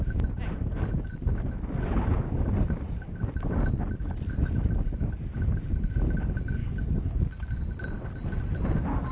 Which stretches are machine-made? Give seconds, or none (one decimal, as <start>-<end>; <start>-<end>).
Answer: 6.6-7.2